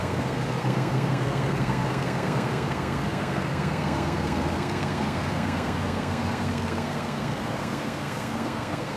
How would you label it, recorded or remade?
remade